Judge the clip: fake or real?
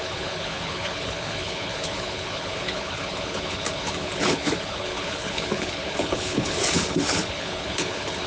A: fake